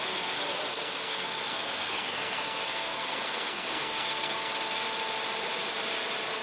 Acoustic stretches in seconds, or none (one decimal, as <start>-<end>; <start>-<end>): 0.0-0.7; 4.5-6.4

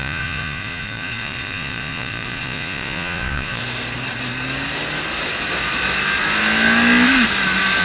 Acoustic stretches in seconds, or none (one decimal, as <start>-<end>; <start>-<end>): 3.6-7.8